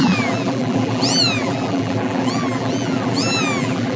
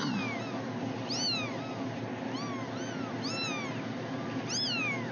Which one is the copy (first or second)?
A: first